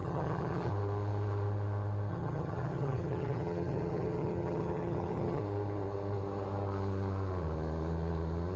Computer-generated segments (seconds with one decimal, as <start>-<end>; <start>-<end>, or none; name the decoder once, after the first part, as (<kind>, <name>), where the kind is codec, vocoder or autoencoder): 0.0-0.7 (vocoder, HiFi-GAN); 2.1-5.4